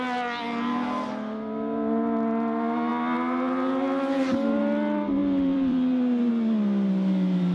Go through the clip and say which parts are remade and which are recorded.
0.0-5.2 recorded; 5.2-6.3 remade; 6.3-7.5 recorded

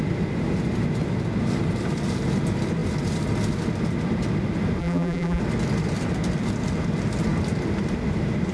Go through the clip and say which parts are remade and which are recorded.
0.0-4.8 recorded; 4.8-5.4 remade; 5.4-8.5 recorded

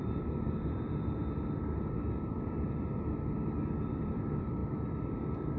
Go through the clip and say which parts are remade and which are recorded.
0.0-1.2 remade; 1.2-2.3 recorded; 2.3-4.6 remade; 4.6-5.6 recorded

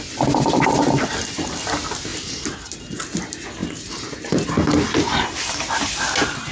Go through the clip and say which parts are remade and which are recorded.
0.0-6.5 recorded

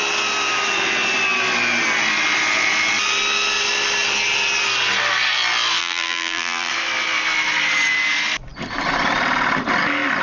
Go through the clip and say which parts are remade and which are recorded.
0.0-5.8 recorded; 5.8-6.7 remade; 6.7-10.2 recorded